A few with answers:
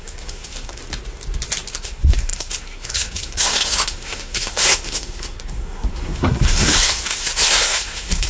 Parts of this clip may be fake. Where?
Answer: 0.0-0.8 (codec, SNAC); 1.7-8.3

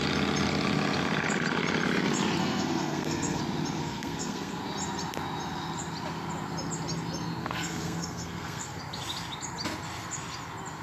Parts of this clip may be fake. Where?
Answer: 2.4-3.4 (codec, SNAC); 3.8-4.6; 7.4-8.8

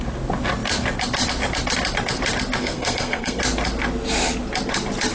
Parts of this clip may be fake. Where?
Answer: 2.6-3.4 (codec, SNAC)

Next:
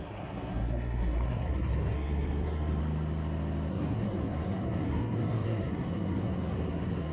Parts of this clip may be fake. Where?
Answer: 0.0-2.8 (codec, SNAC); 3.7-7.1

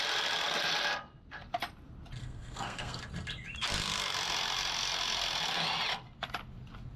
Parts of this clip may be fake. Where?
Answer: 2.2-3.0 (codec, SNAC)

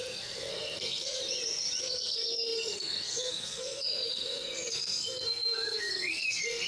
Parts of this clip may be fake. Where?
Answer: 0.0-1.2 (codec, SNAC); 1.8-6.7

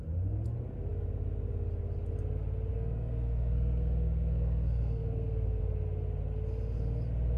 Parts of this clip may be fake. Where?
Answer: 2.7-5.6 (codec, SNAC)

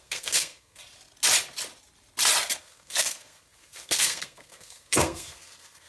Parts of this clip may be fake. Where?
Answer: 0.0-0.8 (codec, SNAC); 2.6-5.9